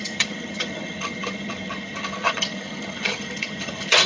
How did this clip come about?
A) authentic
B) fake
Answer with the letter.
B